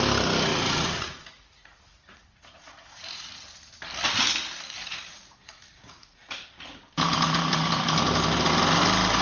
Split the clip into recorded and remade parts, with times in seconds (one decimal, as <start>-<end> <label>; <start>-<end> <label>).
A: 0.0-0.5 recorded; 0.5-3.4 remade; 3.4-4.8 recorded; 4.8-6.3 remade; 6.3-9.2 recorded